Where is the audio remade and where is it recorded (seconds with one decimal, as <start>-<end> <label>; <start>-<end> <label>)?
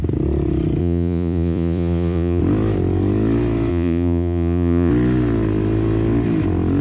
0.0-0.8 recorded; 0.8-2.4 remade; 2.4-3.7 recorded; 3.7-4.9 remade; 4.9-6.8 recorded